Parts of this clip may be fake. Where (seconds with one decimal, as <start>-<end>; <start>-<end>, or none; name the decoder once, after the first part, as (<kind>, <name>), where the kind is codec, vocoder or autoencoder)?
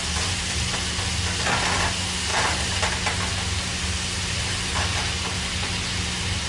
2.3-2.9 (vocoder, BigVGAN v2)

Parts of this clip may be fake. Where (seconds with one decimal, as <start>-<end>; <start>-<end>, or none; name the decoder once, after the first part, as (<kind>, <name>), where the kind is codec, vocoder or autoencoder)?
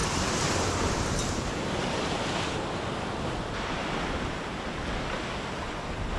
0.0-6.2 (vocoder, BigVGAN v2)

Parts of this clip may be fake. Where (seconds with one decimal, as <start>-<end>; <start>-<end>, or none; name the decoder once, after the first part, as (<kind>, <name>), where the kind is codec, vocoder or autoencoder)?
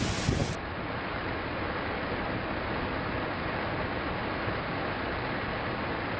none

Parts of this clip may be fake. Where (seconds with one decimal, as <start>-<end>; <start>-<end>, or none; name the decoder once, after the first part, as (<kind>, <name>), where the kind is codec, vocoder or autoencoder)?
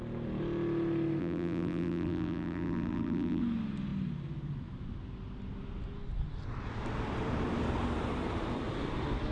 1.2-3.4 (vocoder, BigVGAN v2)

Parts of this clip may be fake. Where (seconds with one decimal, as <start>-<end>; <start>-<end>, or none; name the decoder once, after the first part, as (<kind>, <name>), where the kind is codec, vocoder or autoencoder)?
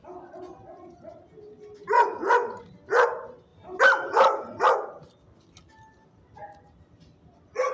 3.5-4.4 (vocoder, BigVGAN v2)